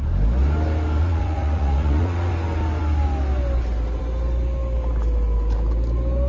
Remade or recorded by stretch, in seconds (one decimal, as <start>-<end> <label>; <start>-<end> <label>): 0.0-1.0 recorded; 1.0-2.3 remade; 2.3-6.3 recorded